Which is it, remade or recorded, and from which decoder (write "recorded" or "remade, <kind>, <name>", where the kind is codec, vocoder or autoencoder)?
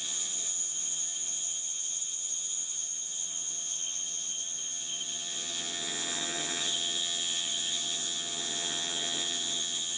remade, vocoder, HiFi-GAN